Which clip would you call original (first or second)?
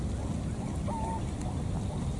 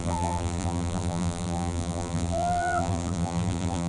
first